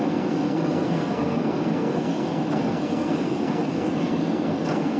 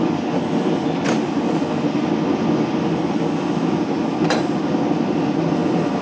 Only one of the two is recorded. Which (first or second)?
second